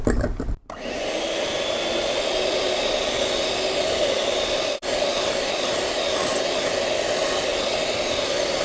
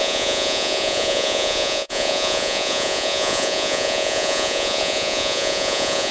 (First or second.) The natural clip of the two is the first